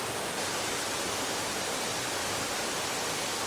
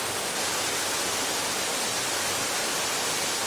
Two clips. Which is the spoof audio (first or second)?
first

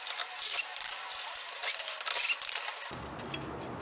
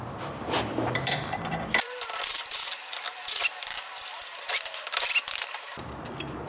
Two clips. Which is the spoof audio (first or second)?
second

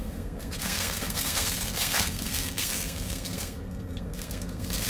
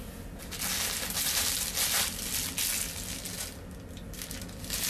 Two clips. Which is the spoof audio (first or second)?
first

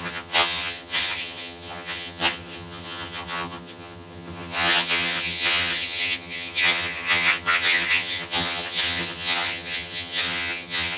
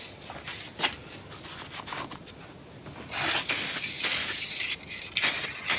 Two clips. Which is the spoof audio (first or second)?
first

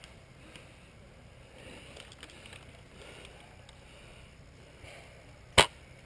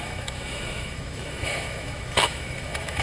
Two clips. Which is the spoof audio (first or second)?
second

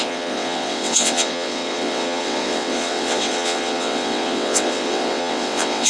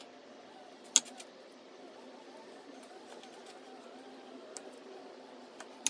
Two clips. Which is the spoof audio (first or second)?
first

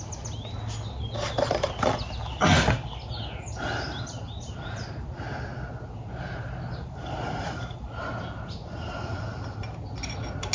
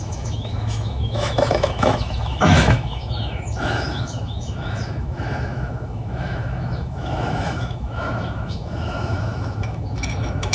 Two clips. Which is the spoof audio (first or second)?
second